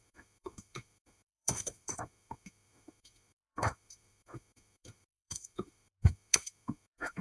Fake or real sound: fake